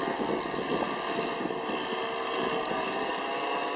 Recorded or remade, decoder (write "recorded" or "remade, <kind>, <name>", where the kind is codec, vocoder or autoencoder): recorded